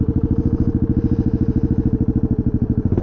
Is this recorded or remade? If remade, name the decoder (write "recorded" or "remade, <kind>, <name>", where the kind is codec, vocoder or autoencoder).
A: recorded